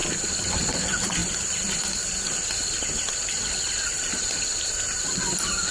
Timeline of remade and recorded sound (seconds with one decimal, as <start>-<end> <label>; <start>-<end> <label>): 0.0-0.5 recorded; 0.5-1.2 remade; 1.2-4.6 recorded; 4.6-5.7 remade